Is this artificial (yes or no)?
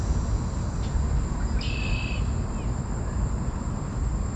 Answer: no